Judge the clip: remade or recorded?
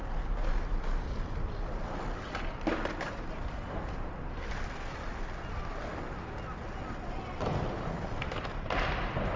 recorded